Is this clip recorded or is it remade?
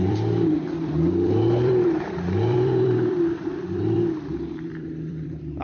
remade